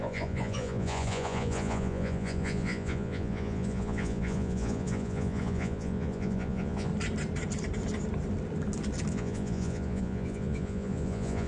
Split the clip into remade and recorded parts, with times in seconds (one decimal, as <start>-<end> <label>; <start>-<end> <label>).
0.0-6.9 remade; 6.9-9.1 recorded; 9.1-11.5 remade